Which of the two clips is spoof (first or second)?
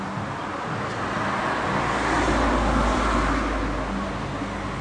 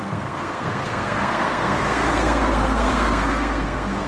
second